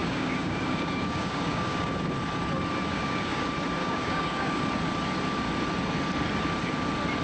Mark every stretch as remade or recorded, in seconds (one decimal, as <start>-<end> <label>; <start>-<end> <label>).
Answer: 0.0-1.9 remade; 1.9-2.9 recorded; 2.9-3.4 remade; 3.4-3.8 recorded; 3.8-4.6 remade; 4.6-7.2 recorded